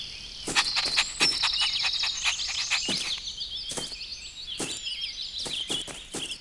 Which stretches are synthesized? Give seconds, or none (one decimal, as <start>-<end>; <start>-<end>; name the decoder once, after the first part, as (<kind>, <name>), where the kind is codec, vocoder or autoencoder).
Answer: none